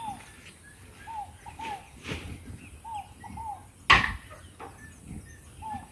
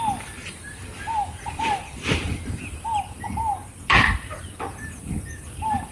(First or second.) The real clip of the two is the first